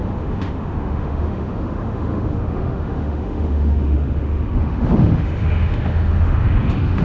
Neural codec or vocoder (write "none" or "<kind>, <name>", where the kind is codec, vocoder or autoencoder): autoencoder, DAC-VAE